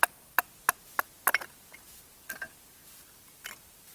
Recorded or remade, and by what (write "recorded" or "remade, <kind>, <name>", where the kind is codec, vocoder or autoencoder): recorded